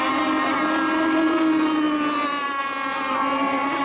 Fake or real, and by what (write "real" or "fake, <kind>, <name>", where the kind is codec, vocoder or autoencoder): real